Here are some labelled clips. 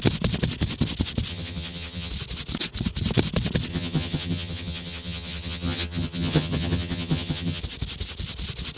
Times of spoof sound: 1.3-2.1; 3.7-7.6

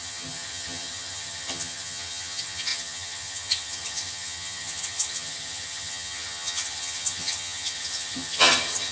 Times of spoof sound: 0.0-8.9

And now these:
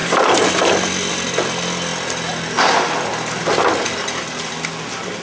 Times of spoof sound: none

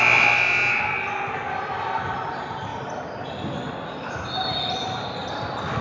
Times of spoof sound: none

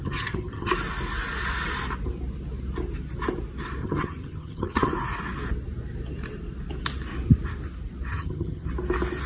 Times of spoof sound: 0.0-0.7; 3.8-4.9; 8.1-8.7

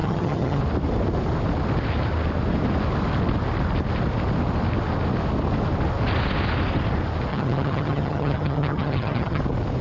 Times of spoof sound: 0.0-0.6; 7.3-9.4

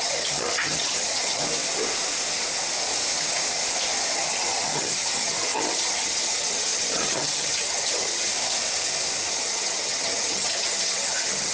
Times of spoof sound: 0.0-1.4; 4.1-8.3; 9.3-11.5